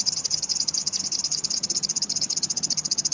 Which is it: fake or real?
fake